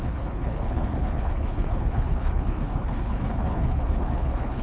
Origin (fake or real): fake